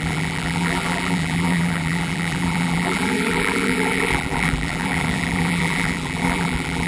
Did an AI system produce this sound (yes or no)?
yes